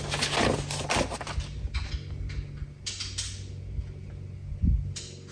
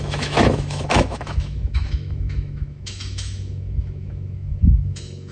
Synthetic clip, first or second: second